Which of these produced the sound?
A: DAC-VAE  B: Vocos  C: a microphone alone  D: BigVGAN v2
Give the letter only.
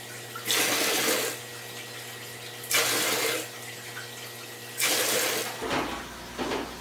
C